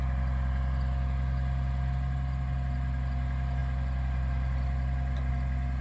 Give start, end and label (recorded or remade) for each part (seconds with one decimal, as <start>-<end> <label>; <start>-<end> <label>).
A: 0.0-5.8 recorded